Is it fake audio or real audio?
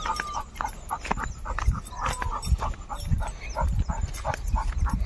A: real